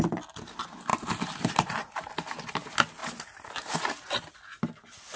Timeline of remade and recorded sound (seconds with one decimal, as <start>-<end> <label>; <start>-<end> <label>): 0.0-0.9 recorded; 0.9-1.9 remade; 1.9-3.0 recorded; 3.0-3.8 remade; 3.8-5.2 recorded